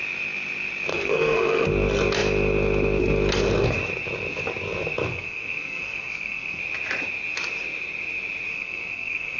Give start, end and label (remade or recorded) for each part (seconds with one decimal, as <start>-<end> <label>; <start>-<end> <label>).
0.0-0.9 recorded; 0.9-1.7 remade; 1.7-5.1 recorded; 5.1-6.6 remade; 6.6-8.5 recorded; 8.5-9.4 remade